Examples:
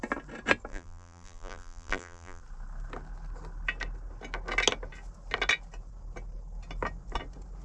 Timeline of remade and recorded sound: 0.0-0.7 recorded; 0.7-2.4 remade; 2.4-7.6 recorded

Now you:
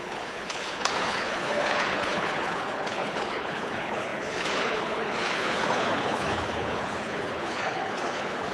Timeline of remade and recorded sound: 0.0-8.5 remade

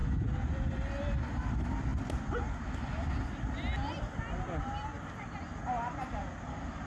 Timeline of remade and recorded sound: 0.0-0.9 remade; 0.9-6.9 recorded

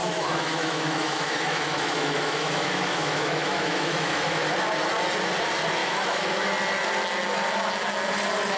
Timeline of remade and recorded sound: 0.0-4.4 remade; 4.4-5.8 recorded; 5.8-6.5 remade; 6.5-8.6 recorded